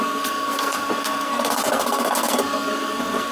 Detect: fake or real fake